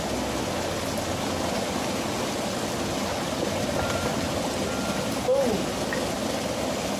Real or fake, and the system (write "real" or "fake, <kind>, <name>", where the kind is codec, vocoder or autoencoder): real